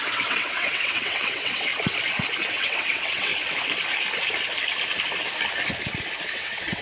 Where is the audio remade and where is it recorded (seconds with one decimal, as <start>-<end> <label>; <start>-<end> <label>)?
0.0-1.7 remade; 1.7-2.5 recorded; 2.5-3.3 remade; 3.3-6.3 recorded; 6.3-6.8 remade

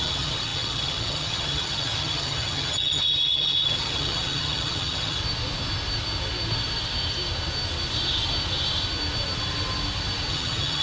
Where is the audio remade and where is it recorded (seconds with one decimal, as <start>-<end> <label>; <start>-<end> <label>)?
0.0-5.2 remade; 5.2-10.3 recorded; 10.3-10.8 remade

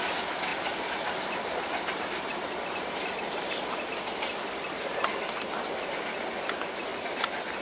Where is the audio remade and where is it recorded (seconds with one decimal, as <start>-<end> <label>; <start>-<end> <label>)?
0.0-7.6 recorded

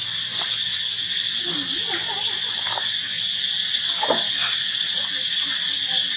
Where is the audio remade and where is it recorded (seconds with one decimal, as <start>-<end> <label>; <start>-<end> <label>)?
0.0-6.2 recorded

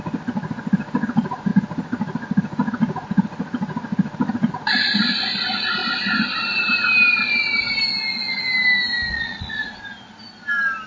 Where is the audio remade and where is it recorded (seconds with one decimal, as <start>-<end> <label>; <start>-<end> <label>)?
0.0-9.1 recorded; 9.1-9.8 remade; 9.8-10.9 recorded

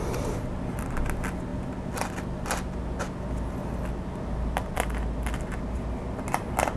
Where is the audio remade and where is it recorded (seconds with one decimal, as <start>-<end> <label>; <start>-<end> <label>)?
0.0-6.8 recorded